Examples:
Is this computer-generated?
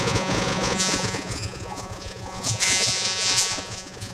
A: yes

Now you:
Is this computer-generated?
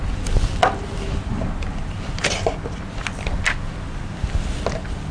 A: no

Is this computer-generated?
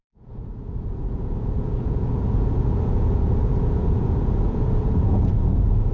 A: yes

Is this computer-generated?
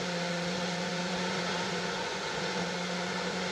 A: yes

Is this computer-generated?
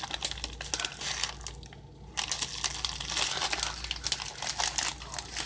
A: no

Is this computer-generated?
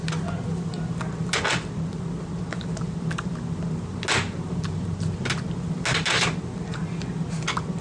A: no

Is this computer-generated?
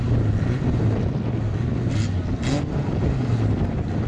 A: no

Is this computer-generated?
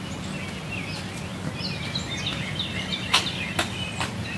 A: no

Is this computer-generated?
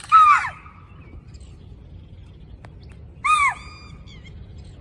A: no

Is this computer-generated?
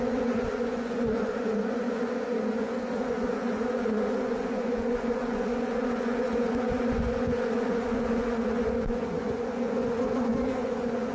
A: yes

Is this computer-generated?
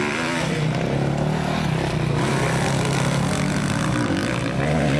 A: no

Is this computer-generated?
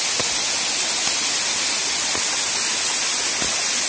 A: no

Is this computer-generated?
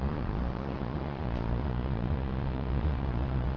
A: yes